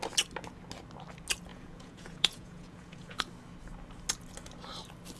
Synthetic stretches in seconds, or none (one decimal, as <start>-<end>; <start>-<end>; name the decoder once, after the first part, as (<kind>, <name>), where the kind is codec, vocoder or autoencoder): 1.5-3.2 (vocoder, Vocos)